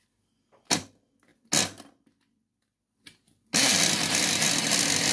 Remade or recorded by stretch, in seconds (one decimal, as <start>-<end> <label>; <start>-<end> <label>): 0.0-5.1 recorded